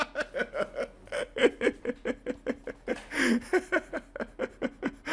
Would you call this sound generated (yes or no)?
no